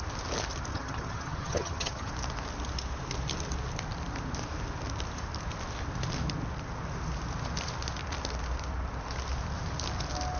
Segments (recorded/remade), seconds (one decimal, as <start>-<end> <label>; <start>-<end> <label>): 0.0-0.7 recorded; 0.7-2.1 remade; 2.1-10.4 recorded